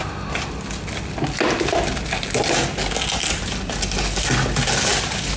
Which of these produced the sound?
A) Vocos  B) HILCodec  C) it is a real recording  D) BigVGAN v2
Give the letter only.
C